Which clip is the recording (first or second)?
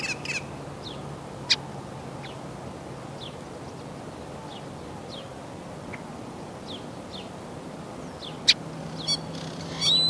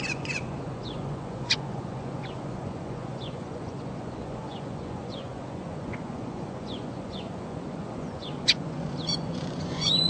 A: first